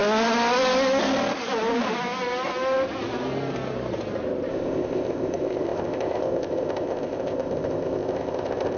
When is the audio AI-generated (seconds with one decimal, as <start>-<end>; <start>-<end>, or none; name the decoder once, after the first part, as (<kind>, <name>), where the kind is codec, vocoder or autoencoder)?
4.5-8.8 (codec, ZipCodec)